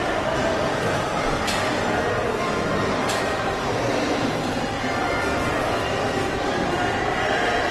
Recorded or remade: remade